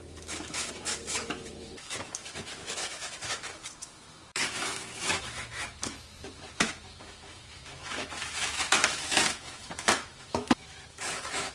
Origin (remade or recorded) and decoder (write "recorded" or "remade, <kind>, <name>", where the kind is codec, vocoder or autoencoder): remade, autoencoder, DAC-VAE